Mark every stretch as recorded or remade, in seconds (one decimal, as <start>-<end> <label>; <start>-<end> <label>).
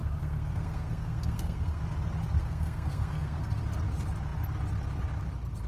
0.0-1.8 remade; 1.8-2.4 recorded; 2.4-3.6 remade; 3.6-5.7 recorded